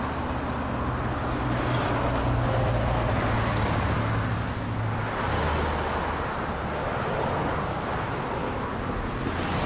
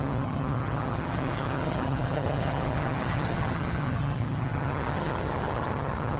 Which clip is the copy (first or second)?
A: second